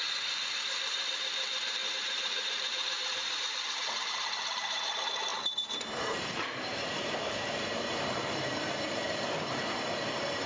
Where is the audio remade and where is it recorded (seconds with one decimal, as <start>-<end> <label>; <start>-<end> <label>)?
0.0-1.8 recorded; 1.8-3.4 remade; 3.4-5.3 recorded; 5.3-9.7 remade; 9.7-10.5 recorded